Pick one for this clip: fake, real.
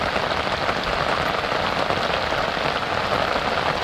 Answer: real